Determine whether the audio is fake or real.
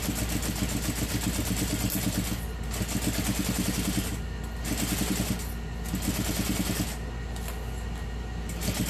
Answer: real